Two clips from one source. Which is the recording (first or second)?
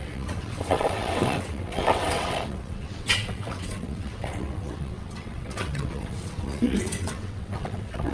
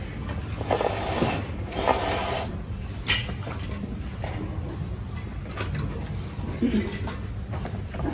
second